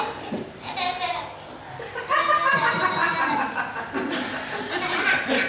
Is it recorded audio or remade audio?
recorded